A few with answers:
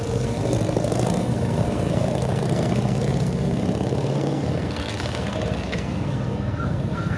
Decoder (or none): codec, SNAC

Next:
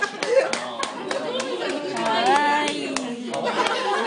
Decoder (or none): none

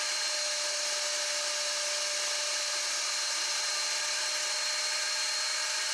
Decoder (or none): none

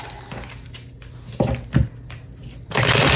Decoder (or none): none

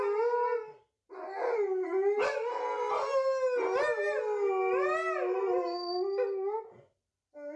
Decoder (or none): none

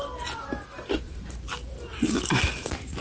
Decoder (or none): none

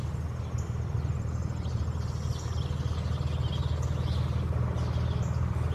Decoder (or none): none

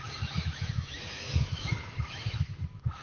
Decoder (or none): autoencoder, DAC-VAE